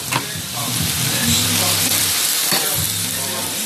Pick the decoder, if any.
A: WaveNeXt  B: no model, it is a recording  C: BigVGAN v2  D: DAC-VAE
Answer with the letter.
C